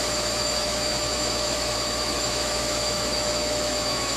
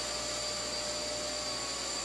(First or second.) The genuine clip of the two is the second